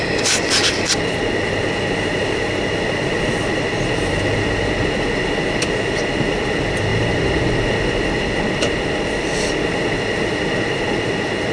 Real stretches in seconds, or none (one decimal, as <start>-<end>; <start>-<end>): 0.0-11.5